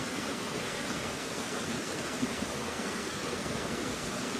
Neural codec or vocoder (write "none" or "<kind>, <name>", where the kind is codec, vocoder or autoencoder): codec, SNAC